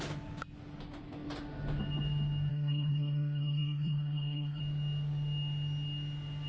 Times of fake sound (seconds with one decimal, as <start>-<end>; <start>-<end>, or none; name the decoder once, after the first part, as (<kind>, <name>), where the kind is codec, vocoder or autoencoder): 2.5-4.6 (codec, SNAC)